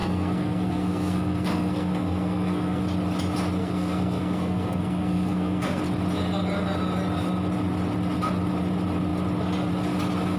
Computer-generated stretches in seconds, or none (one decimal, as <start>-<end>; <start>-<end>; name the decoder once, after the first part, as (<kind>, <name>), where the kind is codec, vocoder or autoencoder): 0.0-2.8 (codec, SNAC); 3.6-5.8